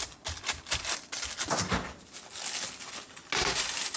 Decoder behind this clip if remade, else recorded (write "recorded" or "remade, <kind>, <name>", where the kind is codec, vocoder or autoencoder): recorded